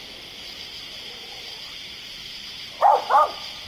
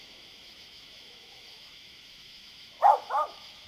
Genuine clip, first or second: first